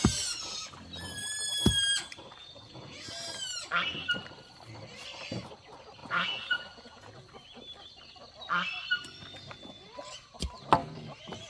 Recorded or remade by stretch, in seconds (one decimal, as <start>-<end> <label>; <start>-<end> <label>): 0.0-2.4 recorded; 2.4-3.1 remade; 3.1-6.0 recorded; 6.0-7.1 remade; 7.1-11.5 recorded